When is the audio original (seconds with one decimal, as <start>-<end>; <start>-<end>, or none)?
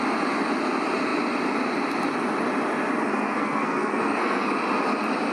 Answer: 0.0-3.1; 4.5-5.3